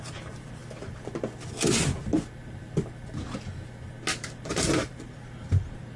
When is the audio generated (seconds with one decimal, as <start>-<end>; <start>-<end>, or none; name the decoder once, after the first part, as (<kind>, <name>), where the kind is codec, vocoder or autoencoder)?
0.0-0.6 (vocoder, BigVGAN v2); 4.2-6.0